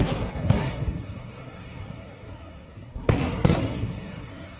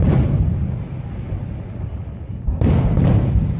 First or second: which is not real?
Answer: first